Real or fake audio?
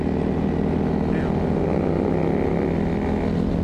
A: real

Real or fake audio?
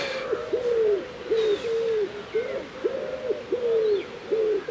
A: real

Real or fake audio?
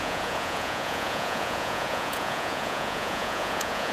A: fake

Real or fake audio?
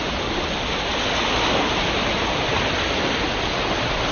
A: real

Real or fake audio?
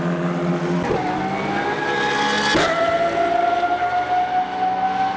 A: real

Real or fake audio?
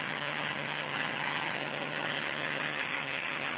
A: fake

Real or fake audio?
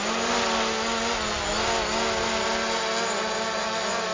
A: real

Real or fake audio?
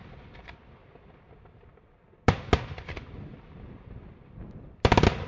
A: real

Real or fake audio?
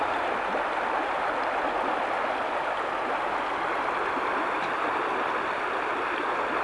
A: real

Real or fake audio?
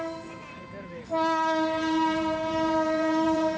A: fake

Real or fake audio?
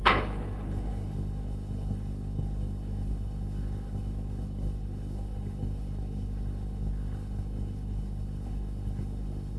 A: fake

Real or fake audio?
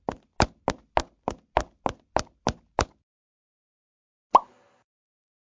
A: real